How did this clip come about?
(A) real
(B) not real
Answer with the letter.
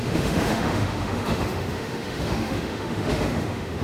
B